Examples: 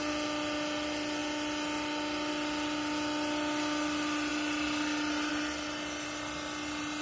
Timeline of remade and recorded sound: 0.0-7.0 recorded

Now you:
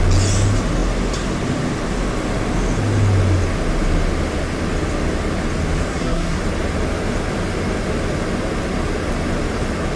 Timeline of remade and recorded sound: 0.0-5.9 recorded; 5.9-6.4 remade; 6.4-10.0 recorded

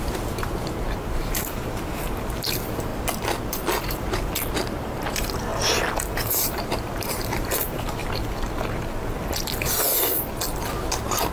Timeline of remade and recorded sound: 0.0-2.9 remade; 2.9-3.8 recorded; 3.8-5.5 remade; 5.5-6.3 recorded; 6.3-8.0 remade; 8.0-10.8 recorded; 10.8-11.3 remade

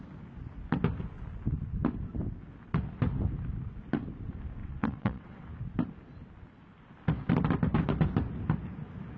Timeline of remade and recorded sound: 0.0-4.6 recorded; 4.6-5.5 remade; 5.5-9.2 recorded

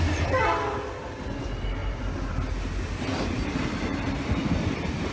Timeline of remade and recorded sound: 0.0-5.1 recorded